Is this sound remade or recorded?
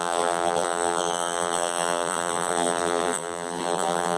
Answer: remade